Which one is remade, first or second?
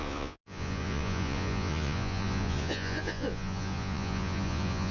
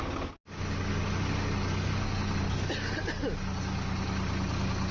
first